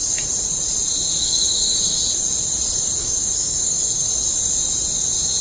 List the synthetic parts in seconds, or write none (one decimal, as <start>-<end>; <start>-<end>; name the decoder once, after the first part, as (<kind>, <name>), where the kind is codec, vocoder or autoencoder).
1.2-2.0 (codec, DAC); 3.0-4.1